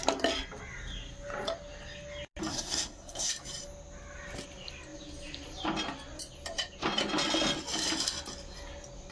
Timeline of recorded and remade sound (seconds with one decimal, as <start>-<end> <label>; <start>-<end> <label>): 0.0-2.5 recorded; 2.5-3.3 remade; 3.3-9.1 recorded